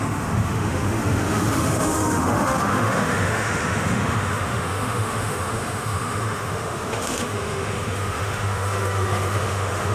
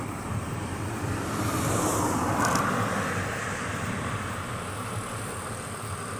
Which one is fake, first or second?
first